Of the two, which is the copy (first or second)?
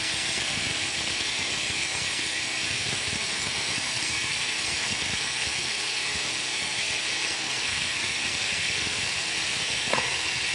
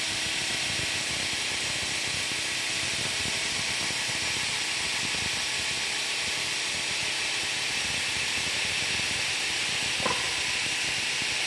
first